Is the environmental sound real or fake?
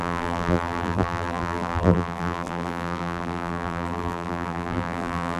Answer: fake